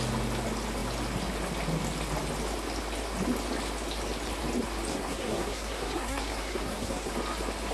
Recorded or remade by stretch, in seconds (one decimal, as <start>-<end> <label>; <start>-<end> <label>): 0.0-4.9 recorded; 4.9-7.1 remade; 7.1-7.7 recorded